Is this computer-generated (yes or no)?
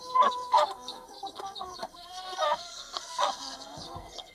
yes